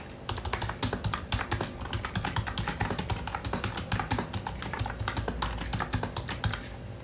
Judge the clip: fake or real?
real